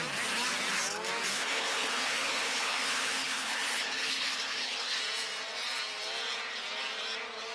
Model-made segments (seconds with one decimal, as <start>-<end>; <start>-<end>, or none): 1.3-5.0